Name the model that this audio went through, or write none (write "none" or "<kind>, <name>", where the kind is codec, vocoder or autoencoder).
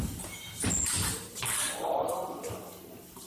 none